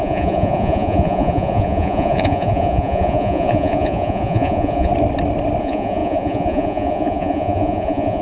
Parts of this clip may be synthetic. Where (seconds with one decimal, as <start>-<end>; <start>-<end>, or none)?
0.0-4.9; 5.6-8.2